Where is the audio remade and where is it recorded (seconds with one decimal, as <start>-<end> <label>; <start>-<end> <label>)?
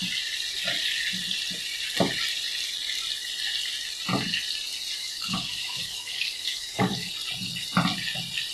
0.0-5.0 recorded; 5.0-7.1 remade; 7.1-8.5 recorded